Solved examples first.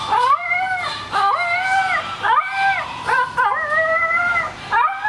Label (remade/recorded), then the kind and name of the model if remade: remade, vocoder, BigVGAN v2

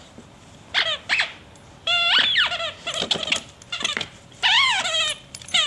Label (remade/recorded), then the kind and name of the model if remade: remade, vocoder, BigVGAN v2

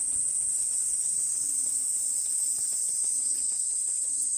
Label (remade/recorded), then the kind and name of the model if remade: remade, vocoder, BigVGAN v2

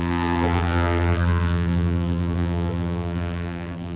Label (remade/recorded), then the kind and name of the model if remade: remade, vocoder, BigVGAN v2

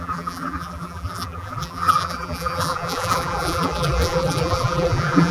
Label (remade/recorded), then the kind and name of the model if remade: remade, vocoder, BigVGAN v2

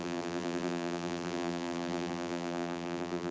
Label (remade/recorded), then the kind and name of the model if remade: remade, vocoder, BigVGAN v2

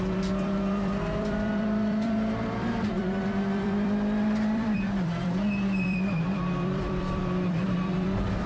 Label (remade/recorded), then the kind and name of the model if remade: remade, vocoder, BigVGAN v2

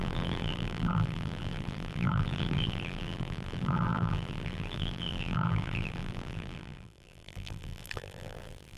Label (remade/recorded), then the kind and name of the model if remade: remade, vocoder, BigVGAN v2